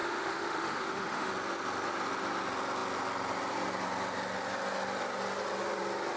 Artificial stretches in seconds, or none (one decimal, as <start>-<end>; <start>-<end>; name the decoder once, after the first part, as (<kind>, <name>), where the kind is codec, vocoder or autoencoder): 0.0-1.3 (autoencoder, DAC-VAE)